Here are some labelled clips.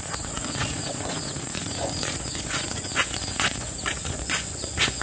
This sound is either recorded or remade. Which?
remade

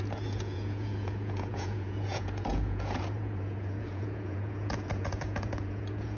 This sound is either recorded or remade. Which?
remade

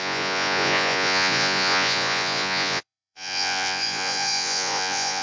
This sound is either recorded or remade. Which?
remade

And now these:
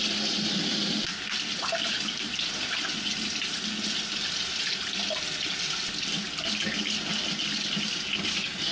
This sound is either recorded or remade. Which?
recorded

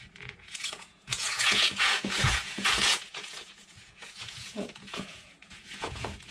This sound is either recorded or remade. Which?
remade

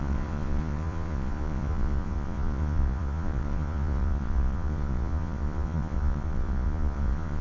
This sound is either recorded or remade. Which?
remade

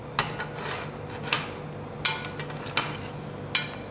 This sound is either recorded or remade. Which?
recorded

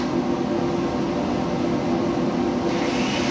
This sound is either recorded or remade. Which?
recorded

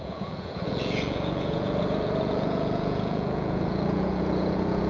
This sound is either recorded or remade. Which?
remade